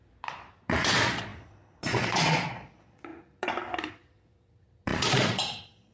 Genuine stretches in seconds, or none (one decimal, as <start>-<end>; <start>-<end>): 3.1-3.9